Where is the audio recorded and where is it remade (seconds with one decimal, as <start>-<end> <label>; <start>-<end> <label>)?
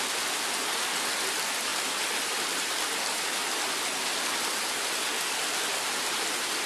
0.0-6.7 recorded